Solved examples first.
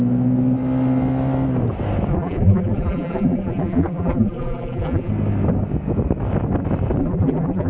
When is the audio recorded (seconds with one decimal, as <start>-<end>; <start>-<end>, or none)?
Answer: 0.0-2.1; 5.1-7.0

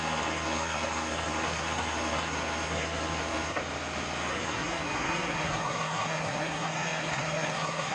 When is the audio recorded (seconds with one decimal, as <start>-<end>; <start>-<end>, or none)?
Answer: 3.6-4.3

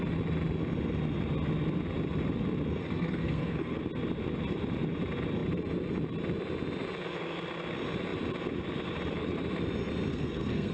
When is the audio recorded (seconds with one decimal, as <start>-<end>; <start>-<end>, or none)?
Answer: 0.0-2.8; 3.8-10.1

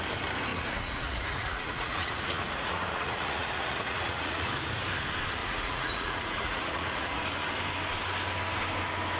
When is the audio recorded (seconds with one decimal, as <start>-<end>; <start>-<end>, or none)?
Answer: 0.0-0.5; 4.5-5.4; 7.2-9.2

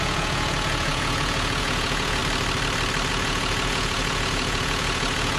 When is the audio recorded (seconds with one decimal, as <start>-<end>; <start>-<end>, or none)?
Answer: 2.2-3.1

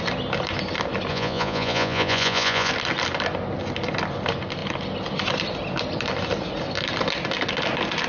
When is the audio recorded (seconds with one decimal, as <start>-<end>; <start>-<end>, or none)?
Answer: 0.0-1.1; 2.7-8.1

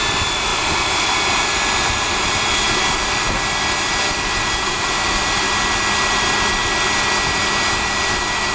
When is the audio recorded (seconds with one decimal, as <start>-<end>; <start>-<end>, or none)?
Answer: 0.0-8.5